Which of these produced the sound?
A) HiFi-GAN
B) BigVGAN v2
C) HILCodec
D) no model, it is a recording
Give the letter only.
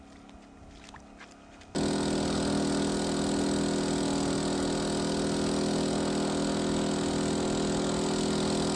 D